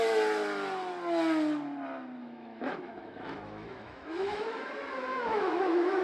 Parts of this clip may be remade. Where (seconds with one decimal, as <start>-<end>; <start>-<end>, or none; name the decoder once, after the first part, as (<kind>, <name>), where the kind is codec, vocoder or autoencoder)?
2.2-4.6 (autoencoder, DAC-VAE); 5.1-6.0